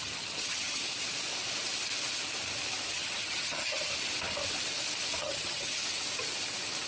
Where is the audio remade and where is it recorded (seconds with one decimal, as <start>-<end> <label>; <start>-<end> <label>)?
0.0-0.8 remade; 0.8-2.9 recorded; 2.9-3.9 remade; 3.9-5.2 recorded; 5.2-5.8 remade; 5.8-6.9 recorded